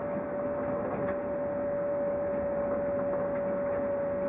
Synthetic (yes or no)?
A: no